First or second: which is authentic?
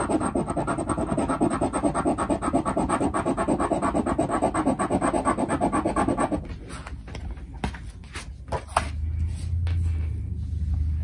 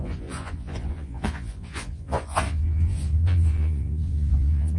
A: first